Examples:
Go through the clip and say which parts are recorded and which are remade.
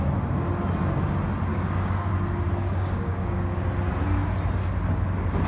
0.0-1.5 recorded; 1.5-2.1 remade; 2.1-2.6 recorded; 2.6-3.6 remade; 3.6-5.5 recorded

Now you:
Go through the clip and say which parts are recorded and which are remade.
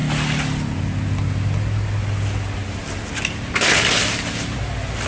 0.0-5.1 recorded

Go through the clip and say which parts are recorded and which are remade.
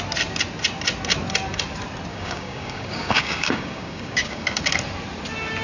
0.0-2.1 recorded; 2.1-4.6 remade; 4.6-5.6 recorded